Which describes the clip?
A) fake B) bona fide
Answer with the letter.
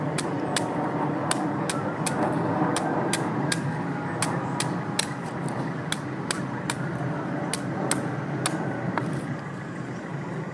B